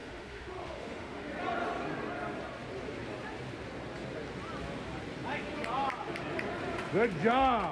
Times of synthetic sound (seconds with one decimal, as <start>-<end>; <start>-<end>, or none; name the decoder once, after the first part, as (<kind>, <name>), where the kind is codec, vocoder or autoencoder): 0.0-1.3 (autoencoder, DAC-VAE)